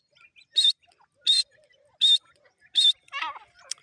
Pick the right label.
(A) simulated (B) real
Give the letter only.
B